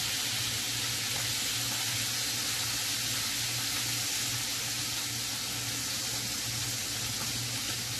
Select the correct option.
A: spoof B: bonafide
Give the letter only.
B